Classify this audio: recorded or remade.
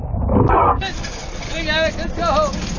recorded